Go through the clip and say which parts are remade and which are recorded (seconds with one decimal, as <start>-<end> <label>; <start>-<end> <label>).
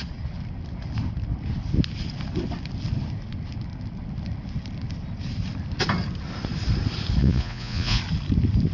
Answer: 0.0-7.2 recorded; 7.2-8.0 remade; 8.0-8.7 recorded